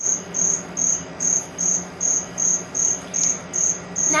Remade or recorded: recorded